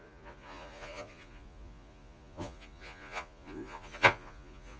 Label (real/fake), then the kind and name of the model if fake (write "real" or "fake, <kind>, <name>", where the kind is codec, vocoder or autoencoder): fake, vocoder, Vocos